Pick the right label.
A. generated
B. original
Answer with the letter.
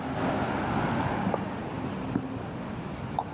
B